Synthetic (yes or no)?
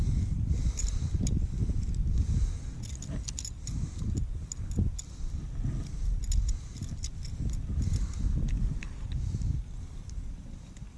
no